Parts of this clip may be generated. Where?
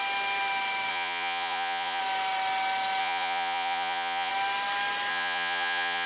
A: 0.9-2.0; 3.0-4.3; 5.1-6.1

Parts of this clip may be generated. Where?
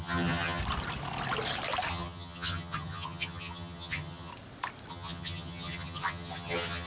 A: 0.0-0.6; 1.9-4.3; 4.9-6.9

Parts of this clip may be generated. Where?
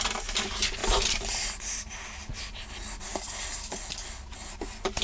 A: 3.1-3.9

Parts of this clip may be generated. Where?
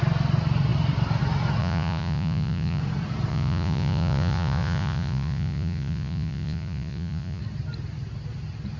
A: 1.6-2.8; 3.3-7.4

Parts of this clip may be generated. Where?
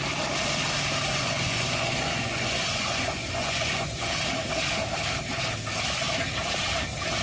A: 1.1-4.1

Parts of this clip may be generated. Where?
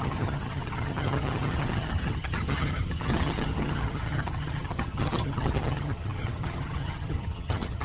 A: 0.0-7.8